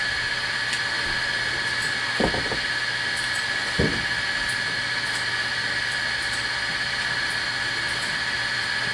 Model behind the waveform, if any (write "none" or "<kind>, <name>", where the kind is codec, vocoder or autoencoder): none